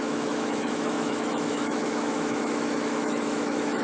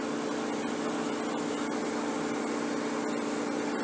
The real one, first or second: second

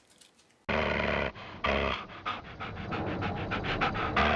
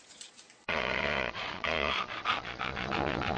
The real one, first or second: first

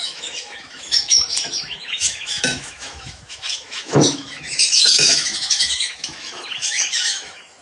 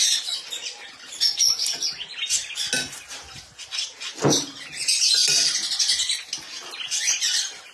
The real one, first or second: second